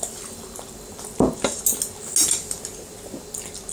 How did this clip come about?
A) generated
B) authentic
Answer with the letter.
B